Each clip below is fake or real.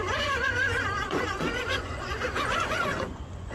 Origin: fake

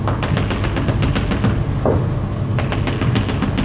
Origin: real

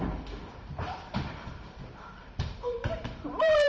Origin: fake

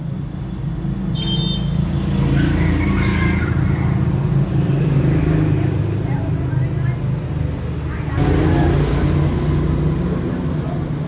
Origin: real